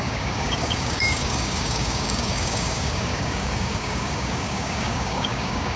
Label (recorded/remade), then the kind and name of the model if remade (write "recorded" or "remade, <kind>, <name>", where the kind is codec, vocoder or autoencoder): remade, codec, DAC